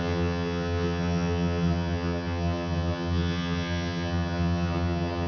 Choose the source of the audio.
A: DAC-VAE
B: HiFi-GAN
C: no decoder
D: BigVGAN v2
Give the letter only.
B